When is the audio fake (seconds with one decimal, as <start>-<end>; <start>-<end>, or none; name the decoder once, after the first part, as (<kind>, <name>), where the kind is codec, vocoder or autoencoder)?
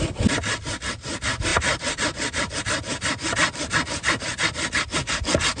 none